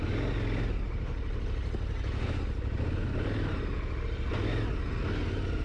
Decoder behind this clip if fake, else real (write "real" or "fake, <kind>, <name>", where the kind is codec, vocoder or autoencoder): real